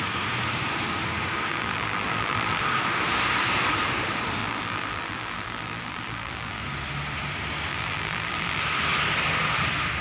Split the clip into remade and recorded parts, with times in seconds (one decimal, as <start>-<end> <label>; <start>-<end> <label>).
0.0-1.5 recorded; 1.5-2.6 remade; 2.6-4.4 recorded; 4.4-6.6 remade; 6.6-7.7 recorded; 7.7-8.6 remade; 8.6-10.0 recorded